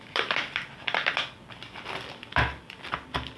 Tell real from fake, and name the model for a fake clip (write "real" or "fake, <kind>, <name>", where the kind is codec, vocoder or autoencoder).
fake, vocoder, BigVGAN v2